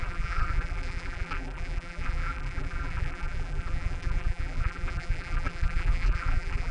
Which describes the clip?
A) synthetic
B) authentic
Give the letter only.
A